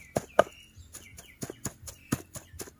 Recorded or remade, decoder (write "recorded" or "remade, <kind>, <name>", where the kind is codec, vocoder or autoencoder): recorded